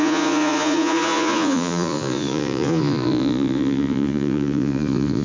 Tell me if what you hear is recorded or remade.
remade